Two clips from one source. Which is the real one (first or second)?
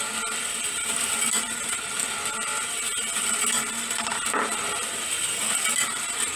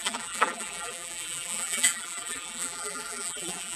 first